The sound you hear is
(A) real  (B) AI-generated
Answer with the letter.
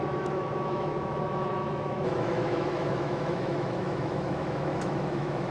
B